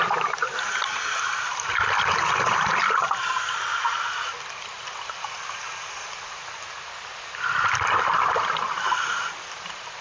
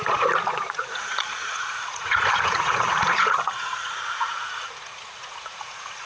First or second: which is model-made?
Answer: second